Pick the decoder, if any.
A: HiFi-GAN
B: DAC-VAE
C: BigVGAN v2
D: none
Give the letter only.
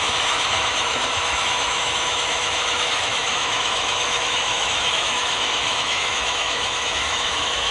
B